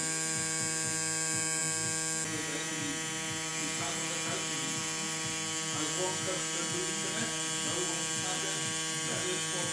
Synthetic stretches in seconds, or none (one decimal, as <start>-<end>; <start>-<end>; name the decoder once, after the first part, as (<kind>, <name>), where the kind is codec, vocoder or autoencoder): none